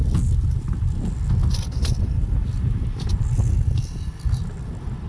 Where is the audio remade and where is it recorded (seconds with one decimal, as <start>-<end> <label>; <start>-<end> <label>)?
0.0-5.1 recorded